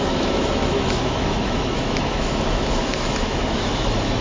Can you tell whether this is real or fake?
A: fake